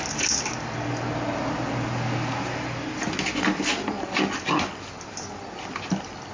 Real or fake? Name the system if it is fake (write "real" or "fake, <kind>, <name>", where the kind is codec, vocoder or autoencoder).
real